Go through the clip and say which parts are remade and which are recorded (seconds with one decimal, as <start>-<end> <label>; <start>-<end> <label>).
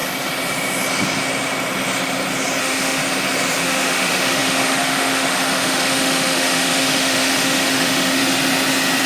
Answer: 0.0-2.6 recorded; 2.6-3.0 remade; 3.0-3.6 recorded; 3.6-8.2 remade; 8.2-9.1 recorded